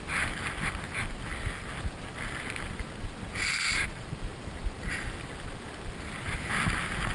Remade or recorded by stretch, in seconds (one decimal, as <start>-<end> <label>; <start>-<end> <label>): 0.0-7.1 recorded